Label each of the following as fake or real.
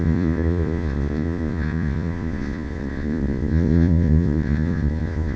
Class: fake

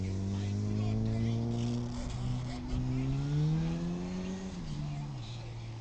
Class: real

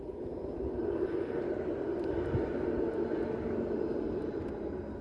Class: real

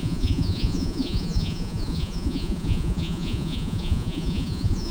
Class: fake